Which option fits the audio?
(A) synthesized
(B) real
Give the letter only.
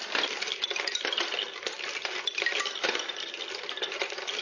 B